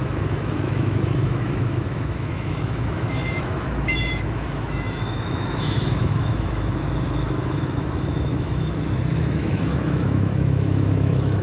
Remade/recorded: remade